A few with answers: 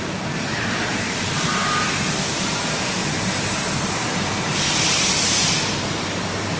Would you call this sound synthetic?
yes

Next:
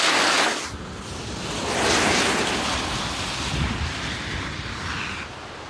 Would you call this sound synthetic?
no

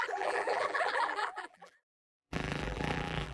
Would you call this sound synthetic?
yes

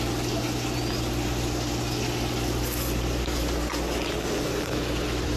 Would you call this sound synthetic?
no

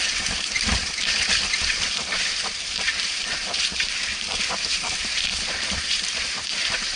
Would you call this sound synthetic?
yes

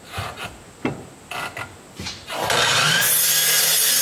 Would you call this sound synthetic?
no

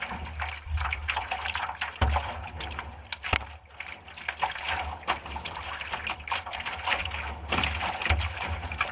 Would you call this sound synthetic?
no